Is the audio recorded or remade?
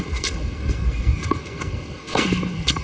remade